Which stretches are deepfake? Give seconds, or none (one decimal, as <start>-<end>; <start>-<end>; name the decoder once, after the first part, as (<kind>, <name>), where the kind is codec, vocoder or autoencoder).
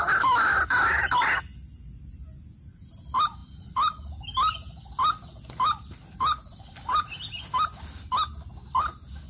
none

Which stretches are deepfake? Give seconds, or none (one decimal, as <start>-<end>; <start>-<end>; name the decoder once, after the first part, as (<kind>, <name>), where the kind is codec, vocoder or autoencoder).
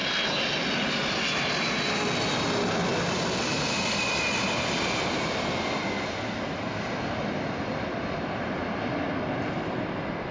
none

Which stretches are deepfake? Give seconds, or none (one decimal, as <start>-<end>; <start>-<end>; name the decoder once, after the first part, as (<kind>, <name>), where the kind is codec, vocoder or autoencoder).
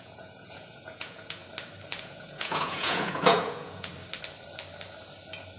0.0-1.4 (vocoder, Vocos); 2.0-3.9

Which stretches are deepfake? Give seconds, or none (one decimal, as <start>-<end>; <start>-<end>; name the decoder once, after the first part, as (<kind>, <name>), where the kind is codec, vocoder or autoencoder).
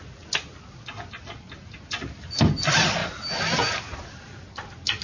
none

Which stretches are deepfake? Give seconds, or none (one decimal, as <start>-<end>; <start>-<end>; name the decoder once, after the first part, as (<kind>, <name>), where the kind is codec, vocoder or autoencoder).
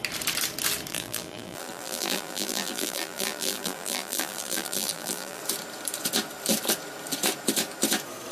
0.9-5.4 (vocoder, BigVGAN v2)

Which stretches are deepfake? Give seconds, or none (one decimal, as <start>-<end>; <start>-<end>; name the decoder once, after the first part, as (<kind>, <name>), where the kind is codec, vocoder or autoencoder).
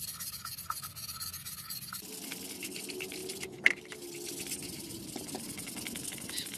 none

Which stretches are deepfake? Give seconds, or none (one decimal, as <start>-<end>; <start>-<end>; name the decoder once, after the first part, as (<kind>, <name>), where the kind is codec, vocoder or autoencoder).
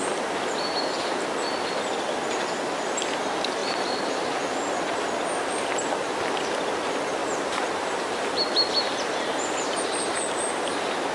3.6-4.1 (vocoder, BigVGAN v2); 7.2-11.1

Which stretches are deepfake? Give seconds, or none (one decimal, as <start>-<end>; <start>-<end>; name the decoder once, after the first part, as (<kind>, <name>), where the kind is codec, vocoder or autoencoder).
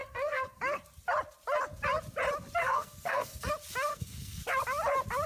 0.0-0.6 (codec, SNAC); 2.6-3.5; 3.9-4.4